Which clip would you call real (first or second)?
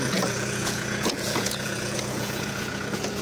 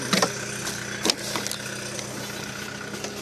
second